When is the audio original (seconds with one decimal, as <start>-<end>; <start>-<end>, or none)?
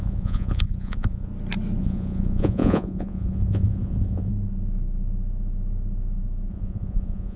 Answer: 1.3-1.8; 4.3-6.5